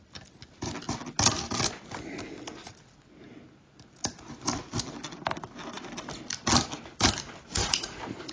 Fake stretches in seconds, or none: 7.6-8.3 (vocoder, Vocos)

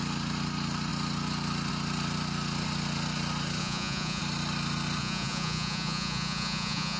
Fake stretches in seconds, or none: 3.6-4.2 (vocoder, Vocos); 5.0-7.0

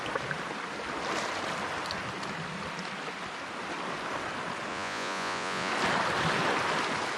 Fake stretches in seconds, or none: 4.7-5.7 (vocoder, Vocos)

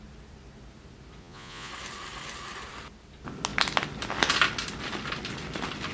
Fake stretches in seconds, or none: 1.2-1.7 (vocoder, Vocos)